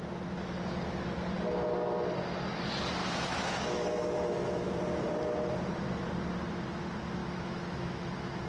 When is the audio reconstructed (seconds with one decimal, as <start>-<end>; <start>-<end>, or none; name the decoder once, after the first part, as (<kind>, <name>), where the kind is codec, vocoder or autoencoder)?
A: 3.0-4.7 (autoencoder, DAC-VAE); 7.2-8.5